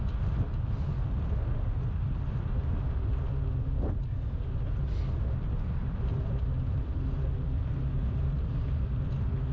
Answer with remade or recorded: recorded